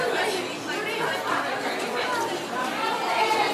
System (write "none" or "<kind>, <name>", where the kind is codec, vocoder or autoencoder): none